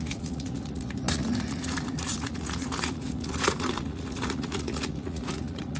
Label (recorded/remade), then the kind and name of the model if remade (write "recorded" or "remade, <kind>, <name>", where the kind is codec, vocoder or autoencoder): remade, vocoder, Vocos